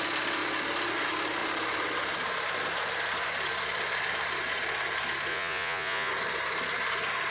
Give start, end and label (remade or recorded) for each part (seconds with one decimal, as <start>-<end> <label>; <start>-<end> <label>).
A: 0.0-5.3 recorded; 5.3-6.1 remade; 6.1-7.3 recorded

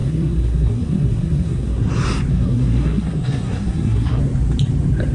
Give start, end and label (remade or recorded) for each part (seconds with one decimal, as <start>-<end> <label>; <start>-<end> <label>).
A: 0.0-1.9 remade; 1.9-2.3 recorded; 2.3-4.2 remade; 4.2-5.1 recorded